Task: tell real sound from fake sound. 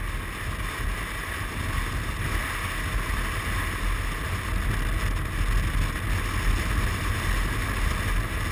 real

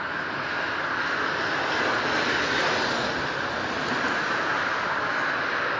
real